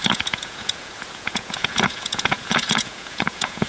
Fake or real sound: fake